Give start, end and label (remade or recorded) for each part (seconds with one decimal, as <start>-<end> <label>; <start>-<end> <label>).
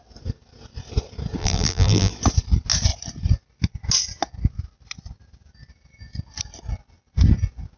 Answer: 0.0-1.4 recorded; 1.4-2.1 remade; 2.1-7.8 recorded